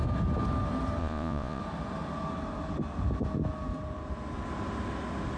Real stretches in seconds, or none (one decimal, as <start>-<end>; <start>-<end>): 0.0-1.0; 1.6-5.4

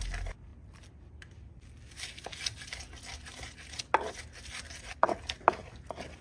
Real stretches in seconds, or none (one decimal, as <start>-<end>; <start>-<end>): 0.0-6.2

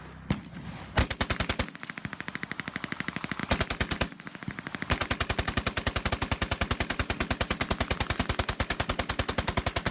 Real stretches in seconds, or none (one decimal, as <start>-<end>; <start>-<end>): 0.0-9.9

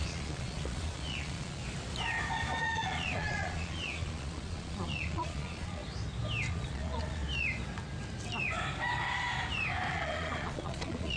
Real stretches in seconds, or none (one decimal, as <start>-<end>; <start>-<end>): 1.6-2.6; 5.8-6.5; 7.2-9.9

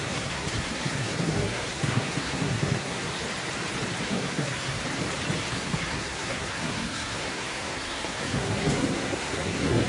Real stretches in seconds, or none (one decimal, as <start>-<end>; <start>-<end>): 3.1-4.0; 4.8-5.5